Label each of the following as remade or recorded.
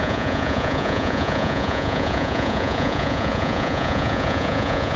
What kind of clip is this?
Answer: remade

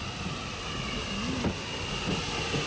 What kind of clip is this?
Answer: recorded